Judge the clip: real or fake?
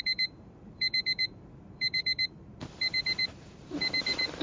fake